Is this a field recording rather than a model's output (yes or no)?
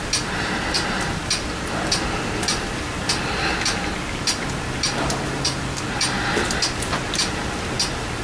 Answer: yes